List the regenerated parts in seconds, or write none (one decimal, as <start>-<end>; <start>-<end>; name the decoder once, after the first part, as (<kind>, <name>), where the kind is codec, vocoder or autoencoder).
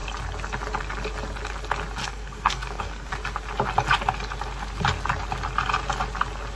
2.0-3.1 (codec, SNAC)